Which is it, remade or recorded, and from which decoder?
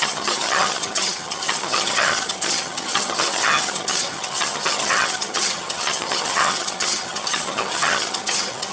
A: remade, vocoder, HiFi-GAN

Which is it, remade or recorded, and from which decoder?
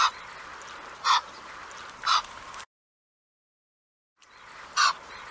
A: recorded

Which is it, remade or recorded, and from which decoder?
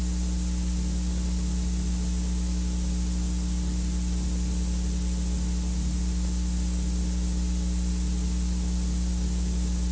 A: recorded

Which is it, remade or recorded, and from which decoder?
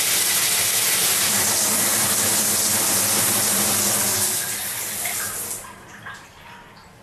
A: recorded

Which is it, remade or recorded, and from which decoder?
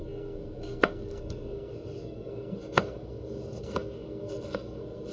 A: remade, codec, SNAC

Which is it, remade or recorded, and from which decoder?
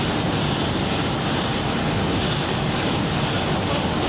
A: recorded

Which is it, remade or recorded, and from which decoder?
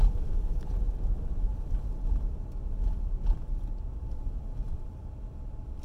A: recorded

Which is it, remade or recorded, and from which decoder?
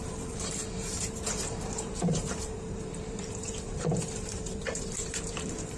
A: remade, vocoder, BigVGAN v2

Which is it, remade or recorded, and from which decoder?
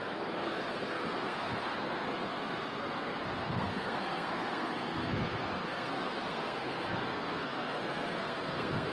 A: remade, codec, SNAC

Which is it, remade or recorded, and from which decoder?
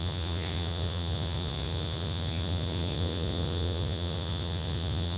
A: remade, vocoder, Vocos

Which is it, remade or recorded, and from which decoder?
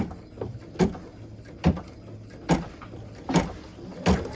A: recorded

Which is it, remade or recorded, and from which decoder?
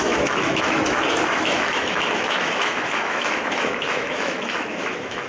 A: remade, autoencoder, DAC-VAE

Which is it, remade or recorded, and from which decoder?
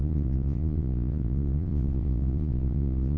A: remade, vocoder, Vocos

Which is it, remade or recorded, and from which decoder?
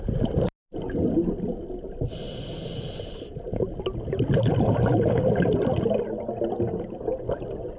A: recorded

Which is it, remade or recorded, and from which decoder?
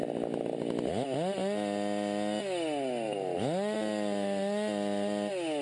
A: recorded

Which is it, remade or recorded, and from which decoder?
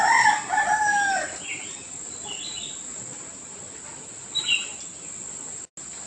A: recorded